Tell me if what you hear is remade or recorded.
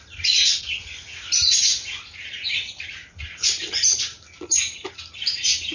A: recorded